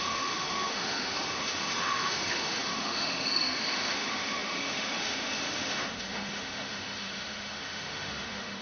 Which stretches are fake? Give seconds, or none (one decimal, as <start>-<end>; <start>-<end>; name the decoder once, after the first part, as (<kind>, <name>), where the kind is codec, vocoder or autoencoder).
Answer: 0.0-8.6 (autoencoder, DAC-VAE)